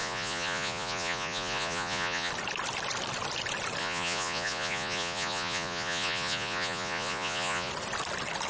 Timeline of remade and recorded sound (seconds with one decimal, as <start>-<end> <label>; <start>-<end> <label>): 0.0-2.3 remade; 2.3-3.8 recorded; 3.8-7.7 remade; 7.7-8.5 recorded